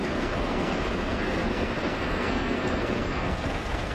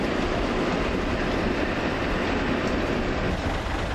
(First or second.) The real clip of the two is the second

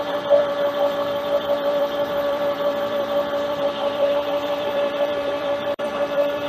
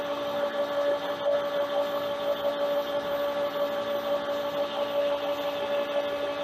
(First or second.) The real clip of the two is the second